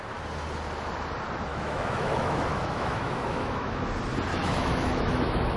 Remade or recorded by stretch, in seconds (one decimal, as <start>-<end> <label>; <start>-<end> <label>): 0.0-1.5 recorded; 1.5-3.9 remade; 3.9-4.3 recorded; 4.3-5.6 remade